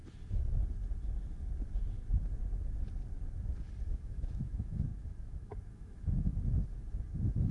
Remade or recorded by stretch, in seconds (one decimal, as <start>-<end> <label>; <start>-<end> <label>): 0.0-3.9 recorded; 3.9-6.3 remade; 6.3-7.5 recorded